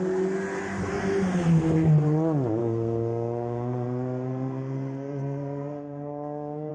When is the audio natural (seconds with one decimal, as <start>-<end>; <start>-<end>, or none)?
0.0-2.6